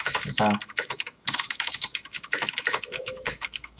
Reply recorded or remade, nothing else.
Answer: remade